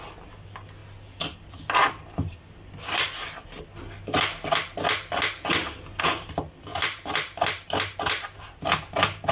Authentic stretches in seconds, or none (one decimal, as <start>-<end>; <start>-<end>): 0.0-9.3